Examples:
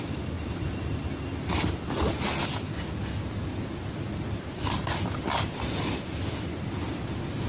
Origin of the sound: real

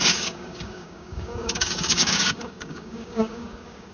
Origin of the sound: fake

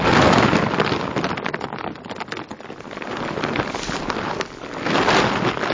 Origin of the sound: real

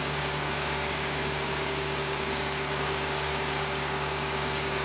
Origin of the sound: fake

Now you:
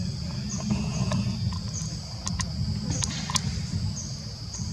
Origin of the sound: real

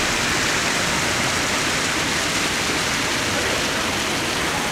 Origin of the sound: real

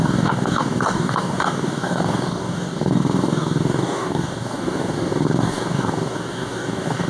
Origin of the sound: fake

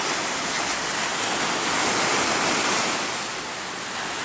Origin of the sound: real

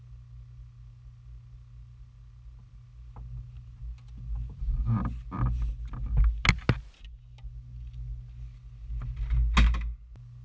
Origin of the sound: real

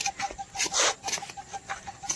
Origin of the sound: real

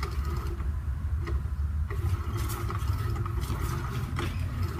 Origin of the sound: real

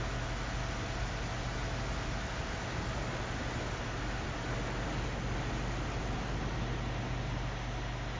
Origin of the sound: real